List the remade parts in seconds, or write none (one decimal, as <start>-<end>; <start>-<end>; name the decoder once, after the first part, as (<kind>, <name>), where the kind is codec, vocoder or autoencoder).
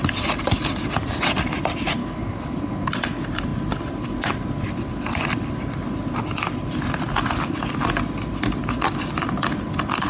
2.0-2.9 (codec, DAC)